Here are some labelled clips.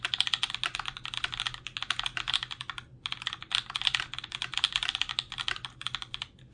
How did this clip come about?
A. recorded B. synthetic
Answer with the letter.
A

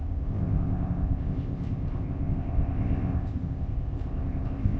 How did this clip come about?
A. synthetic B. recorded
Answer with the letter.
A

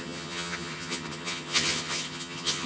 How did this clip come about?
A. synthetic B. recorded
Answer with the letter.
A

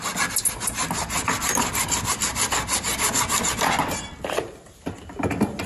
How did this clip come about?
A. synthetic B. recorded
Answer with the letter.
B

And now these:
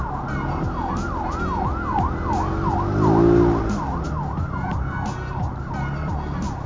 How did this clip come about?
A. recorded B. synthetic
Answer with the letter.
A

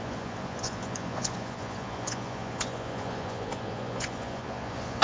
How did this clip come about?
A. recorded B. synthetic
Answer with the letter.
B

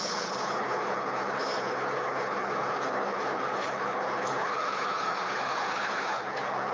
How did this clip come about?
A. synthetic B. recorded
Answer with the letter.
A